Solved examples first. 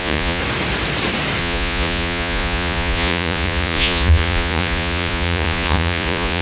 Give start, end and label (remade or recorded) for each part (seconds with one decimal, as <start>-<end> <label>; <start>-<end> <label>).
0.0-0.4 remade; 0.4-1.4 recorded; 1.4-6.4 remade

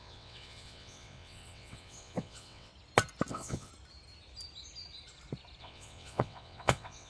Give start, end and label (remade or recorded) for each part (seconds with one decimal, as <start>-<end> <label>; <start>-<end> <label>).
0.0-2.7 remade; 2.7-3.3 recorded; 3.3-3.7 remade; 3.7-5.6 recorded; 5.6-7.1 remade

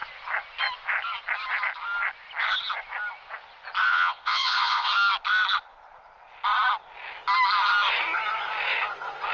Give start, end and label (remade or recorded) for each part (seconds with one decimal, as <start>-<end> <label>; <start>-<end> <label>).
0.0-3.9 recorded; 3.9-4.9 remade; 4.9-9.3 recorded